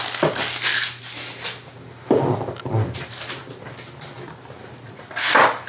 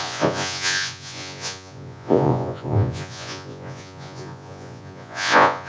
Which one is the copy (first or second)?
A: second